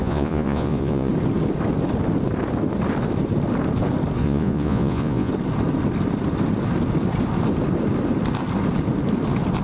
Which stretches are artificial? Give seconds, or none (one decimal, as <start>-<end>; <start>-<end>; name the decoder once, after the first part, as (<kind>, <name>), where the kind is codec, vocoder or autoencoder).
0.0-1.1 (vocoder, Vocos); 4.2-5.3